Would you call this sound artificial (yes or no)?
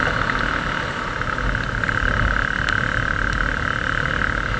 no